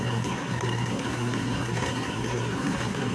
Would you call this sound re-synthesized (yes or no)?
yes